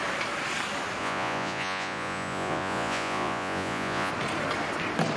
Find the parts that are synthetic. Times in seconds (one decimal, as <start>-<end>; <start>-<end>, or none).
1.0-4.1